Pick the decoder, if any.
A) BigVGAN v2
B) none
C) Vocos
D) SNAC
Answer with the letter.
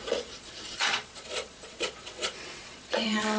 C